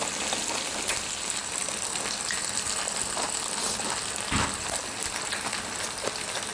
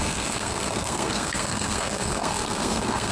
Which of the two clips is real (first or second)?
first